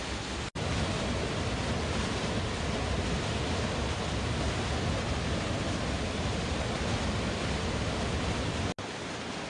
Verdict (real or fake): real